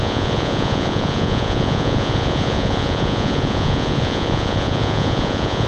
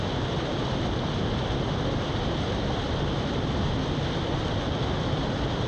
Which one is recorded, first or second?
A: second